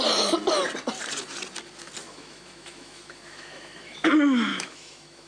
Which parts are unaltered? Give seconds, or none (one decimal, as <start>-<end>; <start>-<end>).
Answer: 0.0-2.0; 4.1-4.5